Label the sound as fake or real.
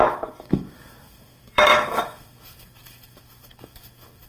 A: fake